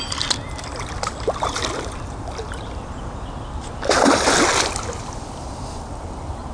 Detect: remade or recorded recorded